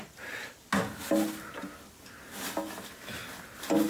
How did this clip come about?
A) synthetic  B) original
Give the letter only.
B